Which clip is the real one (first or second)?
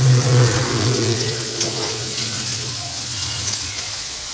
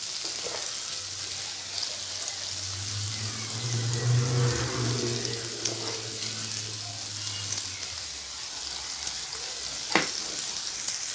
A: second